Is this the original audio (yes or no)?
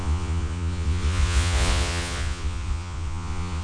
no